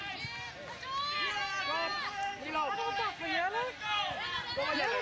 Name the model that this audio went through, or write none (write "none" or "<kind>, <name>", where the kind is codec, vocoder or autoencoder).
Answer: none